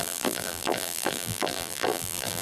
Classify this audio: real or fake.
fake